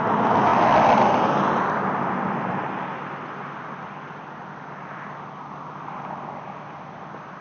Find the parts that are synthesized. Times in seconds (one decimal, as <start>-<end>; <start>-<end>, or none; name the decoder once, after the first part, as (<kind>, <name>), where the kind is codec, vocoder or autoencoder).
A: none